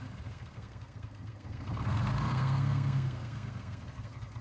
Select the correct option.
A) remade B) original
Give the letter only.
A